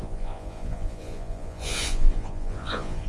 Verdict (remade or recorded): remade